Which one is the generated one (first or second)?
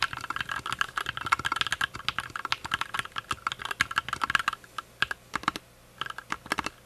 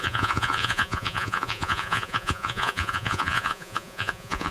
second